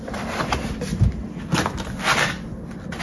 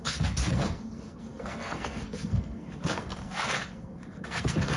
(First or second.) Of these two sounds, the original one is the first